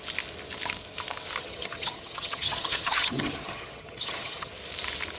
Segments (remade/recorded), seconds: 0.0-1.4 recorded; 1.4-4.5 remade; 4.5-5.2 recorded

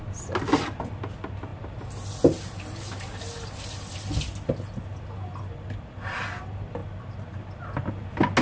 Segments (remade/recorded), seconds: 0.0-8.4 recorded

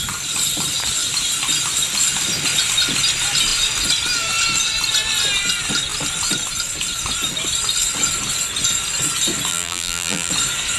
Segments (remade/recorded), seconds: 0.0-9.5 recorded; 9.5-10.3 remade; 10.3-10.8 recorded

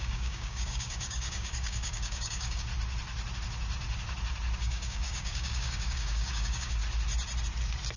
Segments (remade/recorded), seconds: 0.0-2.7 remade; 2.7-4.6 recorded; 4.6-6.8 remade; 6.8-8.0 recorded

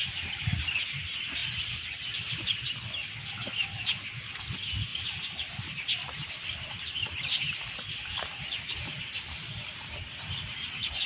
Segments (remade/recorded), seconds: 0.0-0.8 remade; 0.8-4.9 recorded; 4.9-6.3 remade; 6.3-11.1 recorded

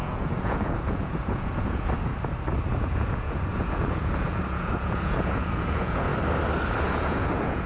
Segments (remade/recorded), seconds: 0.0-2.1 remade; 2.1-2.7 recorded; 2.7-6.1 remade; 6.1-6.8 recorded; 6.8-7.7 remade